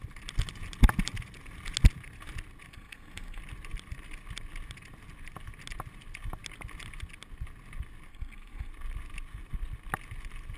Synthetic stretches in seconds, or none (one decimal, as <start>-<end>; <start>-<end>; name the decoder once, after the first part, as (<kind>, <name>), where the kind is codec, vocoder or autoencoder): 2.7-3.4 (codec, SNAC); 8.1-8.7